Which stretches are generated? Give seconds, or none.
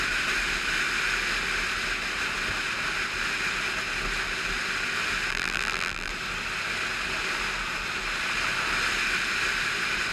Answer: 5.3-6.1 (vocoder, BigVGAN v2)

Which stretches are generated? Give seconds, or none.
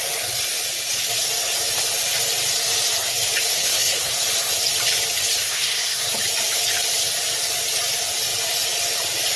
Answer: 3.5-4.1 (codec, SNAC); 5.4-6.0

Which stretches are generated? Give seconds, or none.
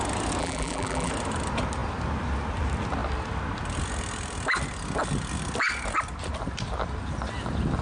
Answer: 0.4-1.1 (vocoder, BigVGAN v2)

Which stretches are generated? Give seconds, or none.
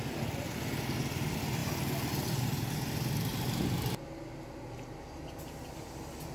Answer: none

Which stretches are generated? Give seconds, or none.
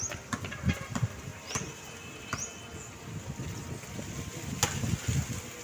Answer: none